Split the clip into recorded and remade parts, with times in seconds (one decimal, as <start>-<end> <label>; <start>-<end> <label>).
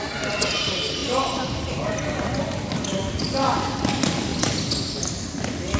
0.0-5.8 recorded